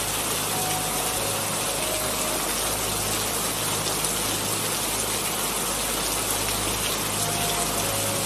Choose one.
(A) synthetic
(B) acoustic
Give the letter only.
B